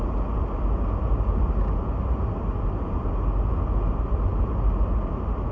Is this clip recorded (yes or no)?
yes